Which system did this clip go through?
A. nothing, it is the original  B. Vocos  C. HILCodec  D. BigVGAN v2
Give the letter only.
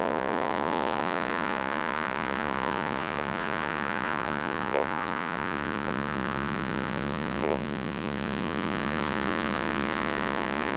B